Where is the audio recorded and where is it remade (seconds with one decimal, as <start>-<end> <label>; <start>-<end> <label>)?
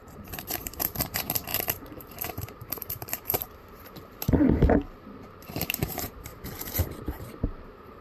0.0-6.3 remade; 6.3-7.0 recorded; 7.0-8.0 remade